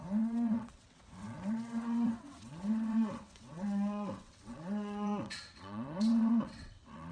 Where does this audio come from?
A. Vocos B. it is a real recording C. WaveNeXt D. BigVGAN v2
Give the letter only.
C